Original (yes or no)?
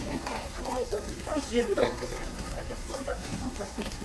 no